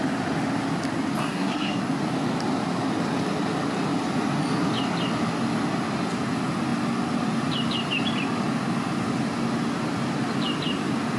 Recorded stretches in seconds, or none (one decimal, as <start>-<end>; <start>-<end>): 0.0-1.2; 1.8-11.2